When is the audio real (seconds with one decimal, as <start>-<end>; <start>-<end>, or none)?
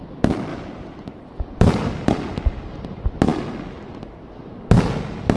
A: 0.0-0.5; 2.1-5.4